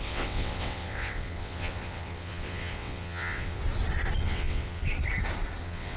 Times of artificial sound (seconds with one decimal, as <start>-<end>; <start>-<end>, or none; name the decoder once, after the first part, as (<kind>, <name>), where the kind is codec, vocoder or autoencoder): 0.0-3.6 (vocoder, WaveNeXt); 4.2-4.8; 5.6-6.0

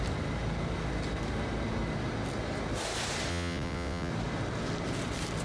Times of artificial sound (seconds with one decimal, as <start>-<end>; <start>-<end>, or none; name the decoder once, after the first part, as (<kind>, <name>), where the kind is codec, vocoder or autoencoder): 3.3-4.1 (vocoder, WaveNeXt)